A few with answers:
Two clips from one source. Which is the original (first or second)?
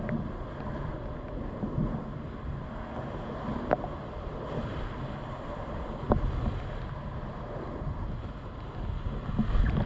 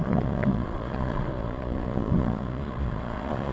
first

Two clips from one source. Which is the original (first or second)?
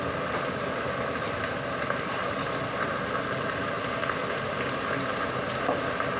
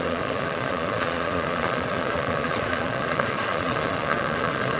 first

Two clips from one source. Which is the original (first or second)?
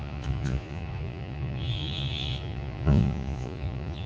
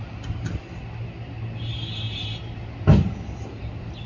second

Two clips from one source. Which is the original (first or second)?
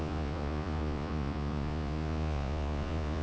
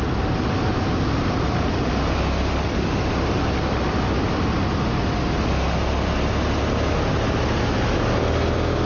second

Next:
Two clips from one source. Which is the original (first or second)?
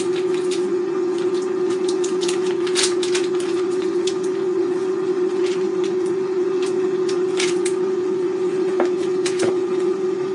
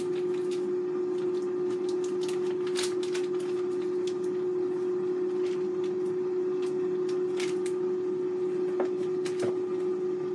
second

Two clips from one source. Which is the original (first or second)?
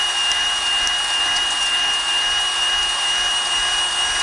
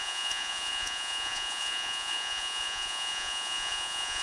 first